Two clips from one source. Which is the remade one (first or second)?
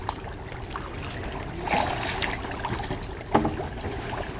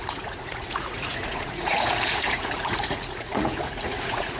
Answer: second